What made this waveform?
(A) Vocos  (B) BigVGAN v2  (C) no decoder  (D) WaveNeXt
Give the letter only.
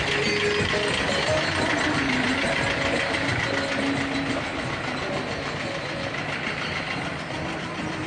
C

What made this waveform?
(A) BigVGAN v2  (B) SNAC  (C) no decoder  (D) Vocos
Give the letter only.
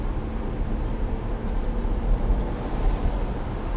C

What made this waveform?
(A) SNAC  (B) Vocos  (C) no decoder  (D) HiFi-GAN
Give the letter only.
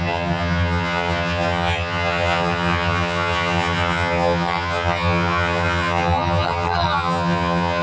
D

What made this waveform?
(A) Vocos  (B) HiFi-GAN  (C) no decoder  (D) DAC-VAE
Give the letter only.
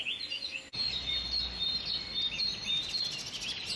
C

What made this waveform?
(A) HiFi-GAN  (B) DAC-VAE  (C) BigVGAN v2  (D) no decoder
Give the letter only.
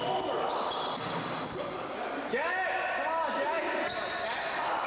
D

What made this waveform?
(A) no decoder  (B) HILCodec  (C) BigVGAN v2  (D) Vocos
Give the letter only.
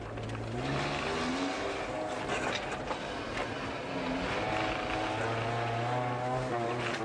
A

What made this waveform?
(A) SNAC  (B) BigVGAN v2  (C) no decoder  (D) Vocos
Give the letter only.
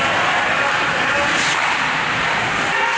C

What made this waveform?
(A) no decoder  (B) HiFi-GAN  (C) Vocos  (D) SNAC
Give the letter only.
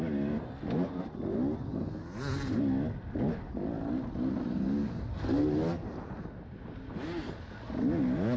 A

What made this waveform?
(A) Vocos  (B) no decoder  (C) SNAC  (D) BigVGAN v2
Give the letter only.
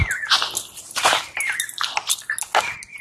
B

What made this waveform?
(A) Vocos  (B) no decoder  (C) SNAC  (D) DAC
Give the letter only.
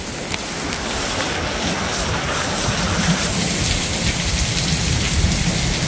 B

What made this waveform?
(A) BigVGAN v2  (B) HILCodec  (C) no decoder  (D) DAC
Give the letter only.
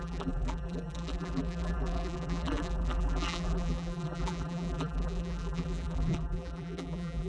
A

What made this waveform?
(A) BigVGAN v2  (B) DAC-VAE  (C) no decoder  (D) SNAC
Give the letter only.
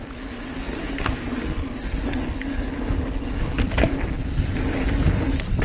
C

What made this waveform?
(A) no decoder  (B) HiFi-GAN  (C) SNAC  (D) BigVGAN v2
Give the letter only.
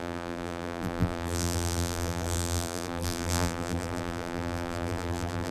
D